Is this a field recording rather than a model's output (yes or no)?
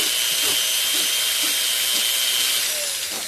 yes